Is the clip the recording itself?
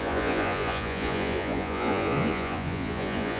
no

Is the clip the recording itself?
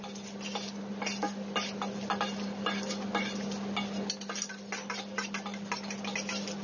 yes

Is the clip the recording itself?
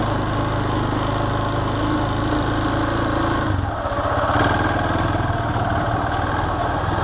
yes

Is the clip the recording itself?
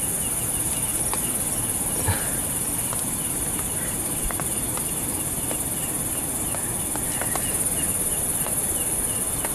yes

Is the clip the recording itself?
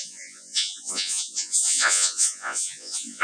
no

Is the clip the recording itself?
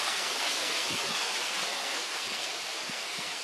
no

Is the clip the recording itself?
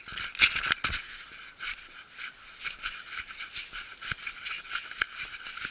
yes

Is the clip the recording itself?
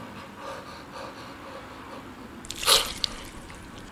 yes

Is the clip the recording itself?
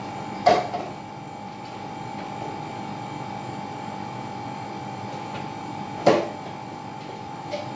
no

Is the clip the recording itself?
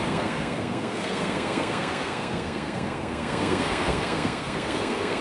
no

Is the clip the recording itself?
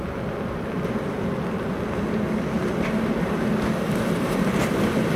yes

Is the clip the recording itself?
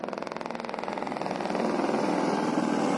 yes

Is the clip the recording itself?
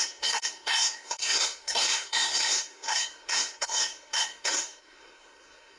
no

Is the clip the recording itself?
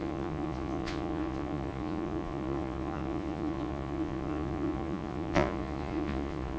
no